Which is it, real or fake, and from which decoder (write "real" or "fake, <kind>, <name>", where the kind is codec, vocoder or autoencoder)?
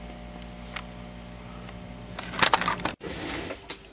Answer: real